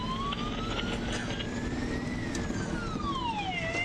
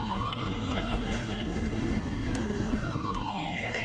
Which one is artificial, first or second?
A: second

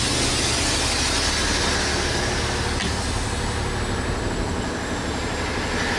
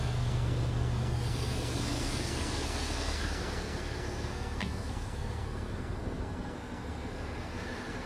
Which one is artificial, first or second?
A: second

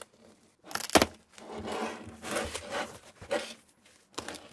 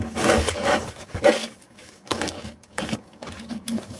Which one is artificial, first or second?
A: second